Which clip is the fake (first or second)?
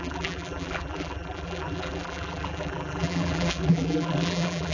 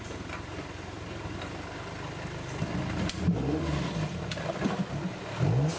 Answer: first